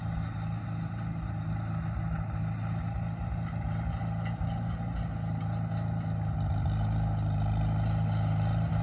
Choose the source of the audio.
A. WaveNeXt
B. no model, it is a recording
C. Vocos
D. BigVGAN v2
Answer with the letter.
B